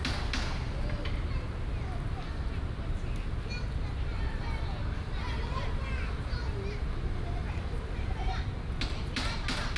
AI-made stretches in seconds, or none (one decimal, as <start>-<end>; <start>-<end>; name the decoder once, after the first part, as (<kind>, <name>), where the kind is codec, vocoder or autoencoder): 7.4-8.6 (vocoder, BigVGAN v2)